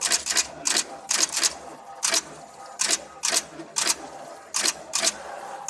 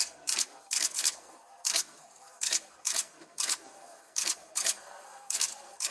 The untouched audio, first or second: first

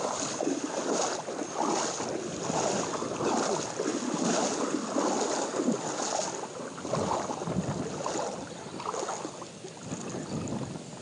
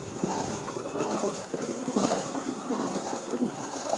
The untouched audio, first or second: first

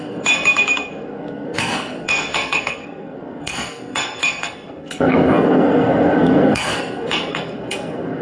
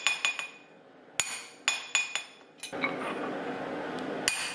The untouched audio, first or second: second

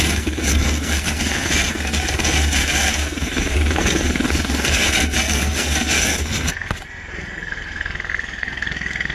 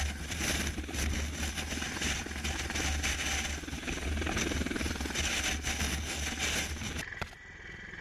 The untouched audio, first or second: second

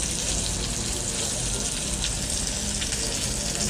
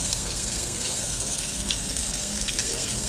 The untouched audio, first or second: first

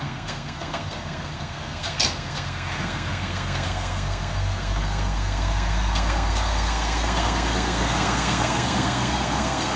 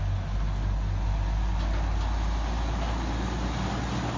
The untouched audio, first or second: second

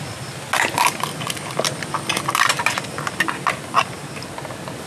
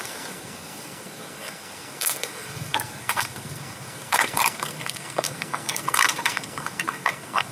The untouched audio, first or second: first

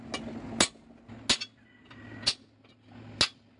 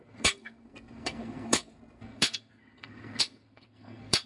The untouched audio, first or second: first